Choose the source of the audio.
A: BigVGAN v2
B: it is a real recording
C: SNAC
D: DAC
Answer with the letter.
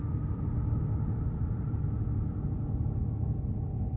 B